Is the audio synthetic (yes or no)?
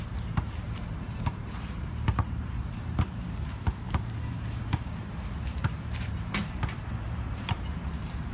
yes